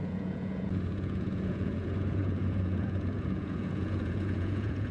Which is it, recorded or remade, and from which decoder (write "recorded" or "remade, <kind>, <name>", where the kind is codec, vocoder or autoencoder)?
remade, vocoder, Vocos